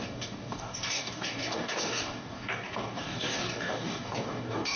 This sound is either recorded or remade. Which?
remade